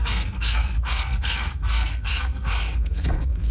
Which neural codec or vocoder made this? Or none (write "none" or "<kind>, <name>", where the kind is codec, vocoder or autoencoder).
codec, SNAC